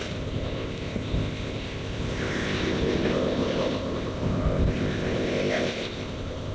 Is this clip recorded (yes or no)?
no